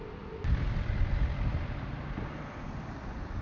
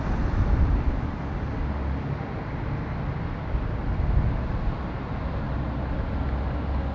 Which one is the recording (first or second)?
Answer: second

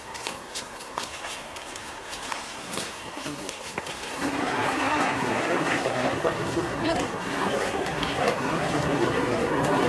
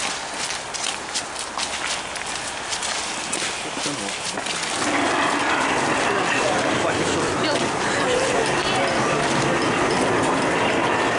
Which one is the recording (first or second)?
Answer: second